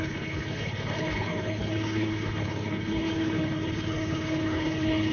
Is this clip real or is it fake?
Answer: fake